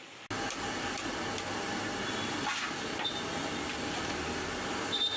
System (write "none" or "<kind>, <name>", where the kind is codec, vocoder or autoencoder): none